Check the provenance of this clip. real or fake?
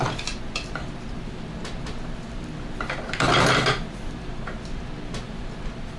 fake